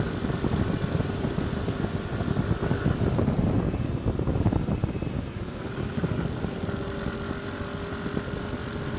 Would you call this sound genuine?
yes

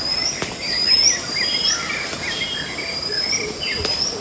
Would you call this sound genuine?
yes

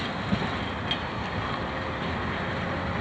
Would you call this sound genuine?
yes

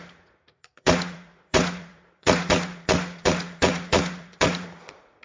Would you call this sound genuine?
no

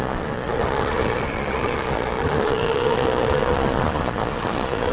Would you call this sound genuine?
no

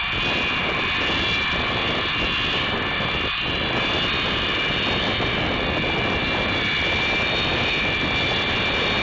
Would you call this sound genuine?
yes